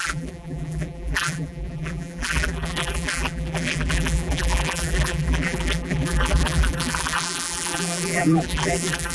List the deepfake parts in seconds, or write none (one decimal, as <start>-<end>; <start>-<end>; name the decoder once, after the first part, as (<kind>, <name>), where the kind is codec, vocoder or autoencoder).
0.0-9.1 (vocoder, BigVGAN v2)